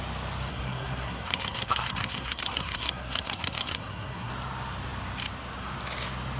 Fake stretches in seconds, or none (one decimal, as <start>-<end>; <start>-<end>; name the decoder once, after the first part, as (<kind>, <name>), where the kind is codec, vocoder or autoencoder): 0.5-4.3 (codec, SNAC)